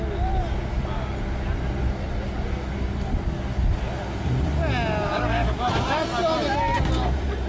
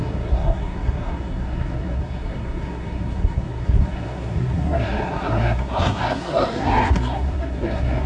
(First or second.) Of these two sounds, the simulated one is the second